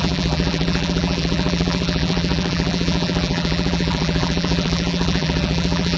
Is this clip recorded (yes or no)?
no